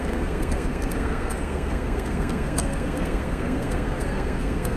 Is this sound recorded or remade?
remade